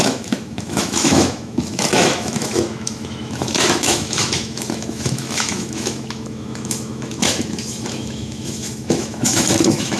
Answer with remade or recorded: remade